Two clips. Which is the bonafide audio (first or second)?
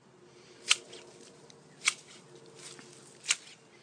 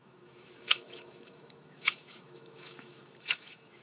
first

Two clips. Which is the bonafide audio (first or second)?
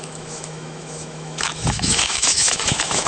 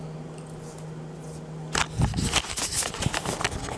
second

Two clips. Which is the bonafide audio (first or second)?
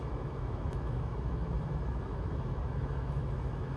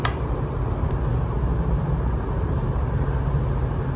second